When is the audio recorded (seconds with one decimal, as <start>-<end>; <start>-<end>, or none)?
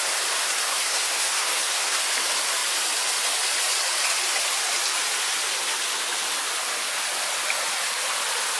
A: 0.0-0.7; 2.0-8.6